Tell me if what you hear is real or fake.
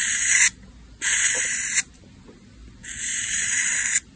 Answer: real